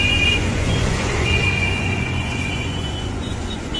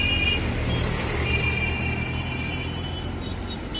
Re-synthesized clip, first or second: first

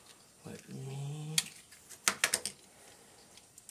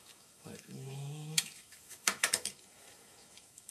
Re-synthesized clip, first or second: second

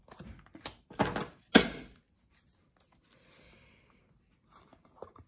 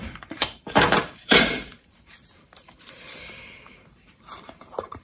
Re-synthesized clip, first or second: second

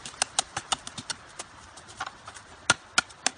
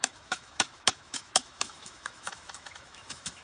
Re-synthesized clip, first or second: second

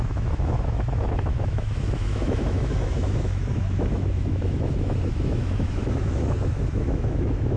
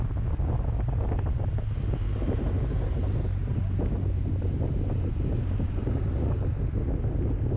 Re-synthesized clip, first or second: first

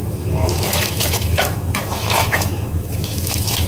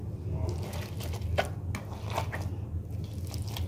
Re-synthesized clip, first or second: first